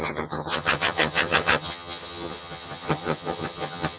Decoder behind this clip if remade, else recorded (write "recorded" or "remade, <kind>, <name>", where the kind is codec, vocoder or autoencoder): remade, vocoder, HiFi-GAN